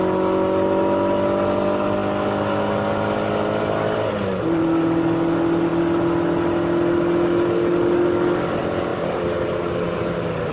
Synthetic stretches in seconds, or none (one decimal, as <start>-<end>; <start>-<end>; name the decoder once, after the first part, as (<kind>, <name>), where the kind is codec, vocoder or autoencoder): none